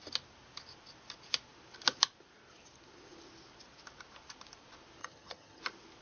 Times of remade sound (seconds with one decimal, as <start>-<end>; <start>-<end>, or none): 5.0-5.6